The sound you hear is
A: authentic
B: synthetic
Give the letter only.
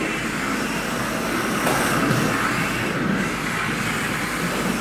A